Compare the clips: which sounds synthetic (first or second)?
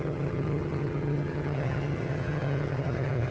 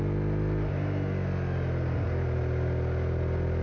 first